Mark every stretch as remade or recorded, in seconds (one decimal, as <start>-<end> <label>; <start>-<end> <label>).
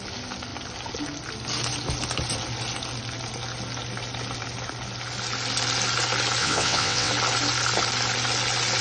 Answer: 0.0-6.4 recorded; 6.4-7.1 remade; 7.1-8.8 recorded